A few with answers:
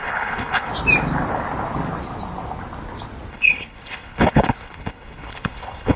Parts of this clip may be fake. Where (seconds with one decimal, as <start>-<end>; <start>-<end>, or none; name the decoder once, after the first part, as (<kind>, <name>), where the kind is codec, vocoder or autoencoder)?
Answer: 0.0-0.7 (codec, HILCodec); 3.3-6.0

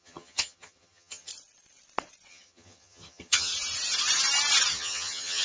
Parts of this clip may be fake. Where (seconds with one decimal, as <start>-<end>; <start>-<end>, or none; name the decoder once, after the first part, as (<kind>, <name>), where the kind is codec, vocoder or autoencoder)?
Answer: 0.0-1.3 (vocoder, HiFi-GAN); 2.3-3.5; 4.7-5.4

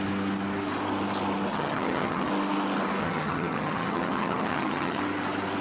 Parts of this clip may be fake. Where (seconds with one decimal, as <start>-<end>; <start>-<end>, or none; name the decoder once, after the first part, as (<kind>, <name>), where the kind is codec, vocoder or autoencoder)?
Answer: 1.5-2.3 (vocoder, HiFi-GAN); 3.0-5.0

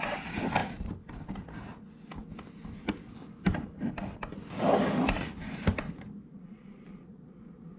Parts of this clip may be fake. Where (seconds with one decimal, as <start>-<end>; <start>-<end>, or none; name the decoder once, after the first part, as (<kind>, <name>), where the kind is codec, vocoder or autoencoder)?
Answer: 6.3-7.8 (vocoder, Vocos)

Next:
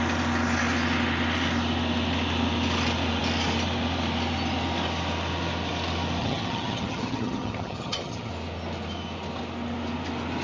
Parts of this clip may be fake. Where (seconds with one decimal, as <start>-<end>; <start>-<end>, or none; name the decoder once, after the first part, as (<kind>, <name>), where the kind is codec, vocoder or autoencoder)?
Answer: 6.2-8.3 (vocoder, HiFi-GAN)

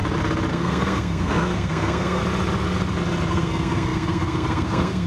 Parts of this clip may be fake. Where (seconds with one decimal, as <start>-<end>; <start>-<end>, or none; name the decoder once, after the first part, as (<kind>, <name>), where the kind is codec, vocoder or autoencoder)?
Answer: 0.5-2.2 (codec, SNAC); 3.3-5.1

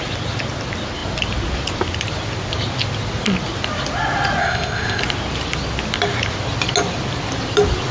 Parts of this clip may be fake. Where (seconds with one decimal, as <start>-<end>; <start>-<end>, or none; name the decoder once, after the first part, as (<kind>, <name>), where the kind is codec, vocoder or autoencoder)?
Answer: 4.4-5.0 (codec, ZipCodec)

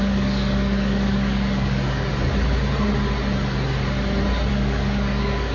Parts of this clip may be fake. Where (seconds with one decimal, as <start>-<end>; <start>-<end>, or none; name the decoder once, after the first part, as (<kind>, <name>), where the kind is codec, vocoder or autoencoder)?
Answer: 0.0-2.1 (codec, DAC); 4.5-5.5